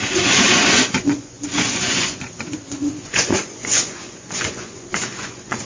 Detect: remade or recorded remade